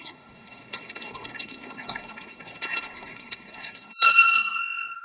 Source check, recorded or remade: remade